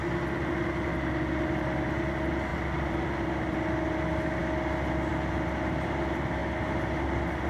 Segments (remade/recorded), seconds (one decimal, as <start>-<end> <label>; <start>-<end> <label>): 0.0-2.5 recorded; 2.5-3.5 remade; 3.5-7.5 recorded